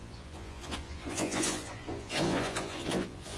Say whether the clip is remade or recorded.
remade